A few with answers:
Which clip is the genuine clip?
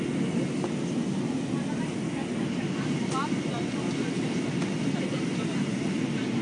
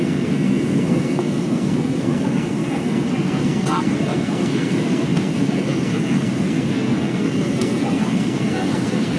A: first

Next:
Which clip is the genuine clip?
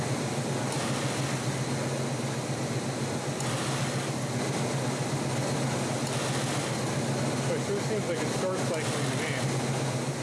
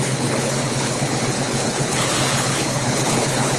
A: first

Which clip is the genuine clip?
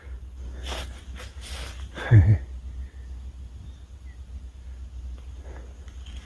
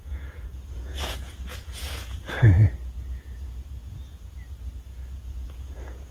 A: first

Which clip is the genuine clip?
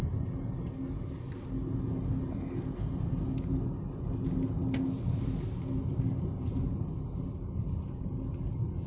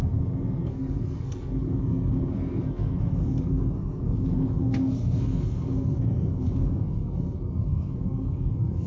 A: first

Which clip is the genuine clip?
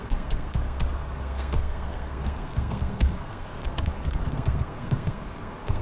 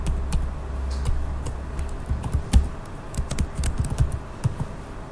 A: second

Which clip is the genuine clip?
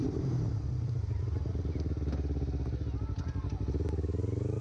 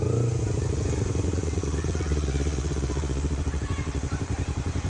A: first